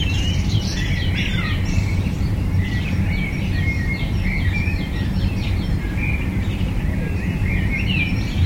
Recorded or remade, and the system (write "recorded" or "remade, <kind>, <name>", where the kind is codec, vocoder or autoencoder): remade, vocoder, BigVGAN v2